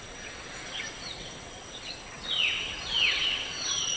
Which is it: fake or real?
fake